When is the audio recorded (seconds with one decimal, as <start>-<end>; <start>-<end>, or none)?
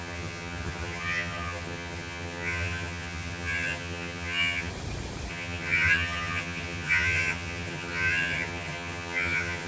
4.7-5.3